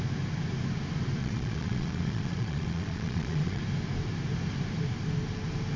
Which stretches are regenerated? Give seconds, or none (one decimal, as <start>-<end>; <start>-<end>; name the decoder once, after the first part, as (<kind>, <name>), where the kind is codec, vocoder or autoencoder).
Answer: 1.2-3.6 (vocoder, Vocos)